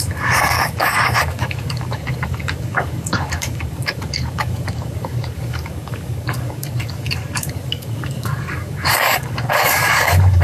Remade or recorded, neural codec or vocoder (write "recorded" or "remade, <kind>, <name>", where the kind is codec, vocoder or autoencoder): remade, codec, DAC